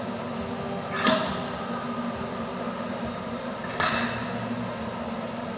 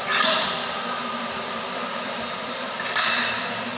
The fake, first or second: second